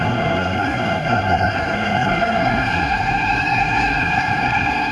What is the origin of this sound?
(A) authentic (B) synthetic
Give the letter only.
B